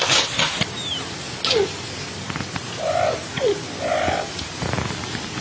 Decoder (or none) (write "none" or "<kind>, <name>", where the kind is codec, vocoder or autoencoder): none